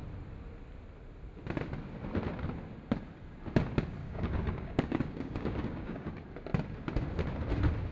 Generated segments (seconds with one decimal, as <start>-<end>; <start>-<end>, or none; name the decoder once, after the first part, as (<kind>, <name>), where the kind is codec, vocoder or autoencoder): 4.0-6.1 (codec, DAC)